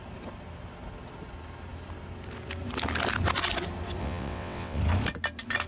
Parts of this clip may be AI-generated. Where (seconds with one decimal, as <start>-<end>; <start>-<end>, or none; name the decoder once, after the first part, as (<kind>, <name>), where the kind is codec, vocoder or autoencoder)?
4.0-4.8 (vocoder, WaveNeXt)